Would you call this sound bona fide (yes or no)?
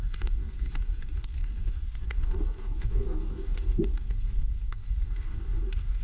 no